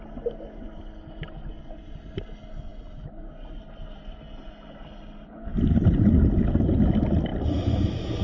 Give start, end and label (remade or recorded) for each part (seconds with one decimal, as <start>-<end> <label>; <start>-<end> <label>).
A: 0.0-8.2 recorded